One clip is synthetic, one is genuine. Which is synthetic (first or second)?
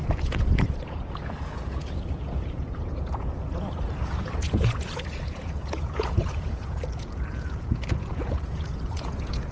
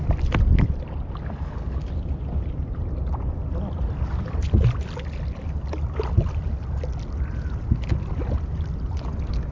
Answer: first